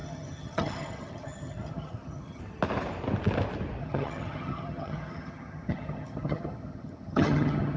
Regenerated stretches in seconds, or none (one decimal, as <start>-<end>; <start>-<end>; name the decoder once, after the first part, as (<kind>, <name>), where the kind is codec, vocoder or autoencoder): 0.0-2.4 (vocoder, HiFi-GAN); 3.8-7.8

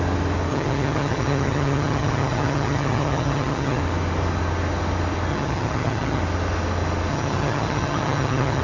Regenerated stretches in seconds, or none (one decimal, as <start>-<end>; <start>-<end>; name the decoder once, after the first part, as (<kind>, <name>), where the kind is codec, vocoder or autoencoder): 0.5-3.8 (vocoder, HiFi-GAN); 5.3-6.2; 7.1-8.6